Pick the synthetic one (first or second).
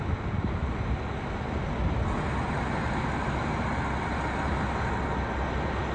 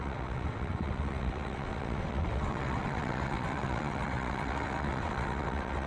second